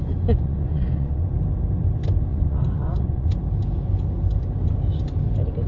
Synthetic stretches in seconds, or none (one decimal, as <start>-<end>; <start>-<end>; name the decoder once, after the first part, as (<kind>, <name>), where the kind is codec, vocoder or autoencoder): 0.0-1.3 (vocoder, Vocos); 2.3-3.3